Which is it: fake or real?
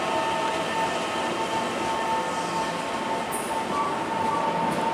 real